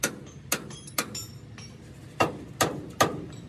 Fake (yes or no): no